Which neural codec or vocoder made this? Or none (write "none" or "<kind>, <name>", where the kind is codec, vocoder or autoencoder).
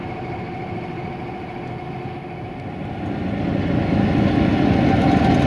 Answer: none